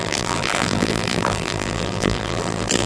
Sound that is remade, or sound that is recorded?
remade